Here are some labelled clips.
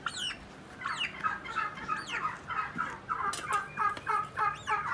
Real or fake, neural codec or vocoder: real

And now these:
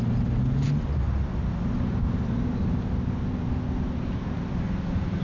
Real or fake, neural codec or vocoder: real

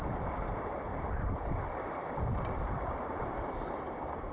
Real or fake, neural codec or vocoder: fake, vocoder, BigVGAN v2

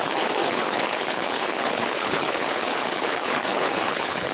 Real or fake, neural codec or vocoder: fake, codec, HILCodec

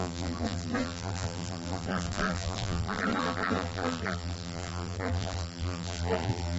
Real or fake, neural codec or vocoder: fake, vocoder, BigVGAN v2